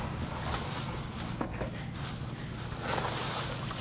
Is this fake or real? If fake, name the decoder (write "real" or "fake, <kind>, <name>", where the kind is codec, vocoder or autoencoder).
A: real